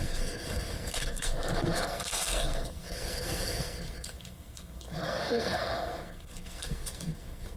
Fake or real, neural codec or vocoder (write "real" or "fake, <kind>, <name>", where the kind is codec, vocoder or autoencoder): fake, codec, SNAC